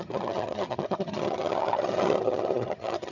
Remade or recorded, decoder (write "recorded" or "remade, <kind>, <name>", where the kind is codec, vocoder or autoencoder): remade, vocoder, HiFi-GAN